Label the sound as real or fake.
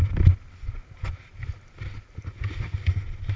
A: real